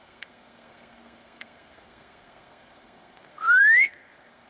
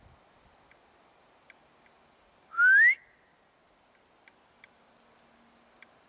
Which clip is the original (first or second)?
second